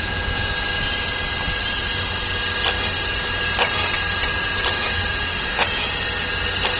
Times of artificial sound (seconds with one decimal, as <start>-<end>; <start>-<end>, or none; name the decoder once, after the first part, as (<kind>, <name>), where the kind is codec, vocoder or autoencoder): 4.7-5.9 (vocoder, Vocos)